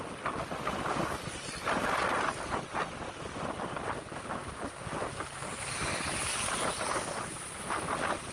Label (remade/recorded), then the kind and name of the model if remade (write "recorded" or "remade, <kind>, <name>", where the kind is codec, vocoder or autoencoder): recorded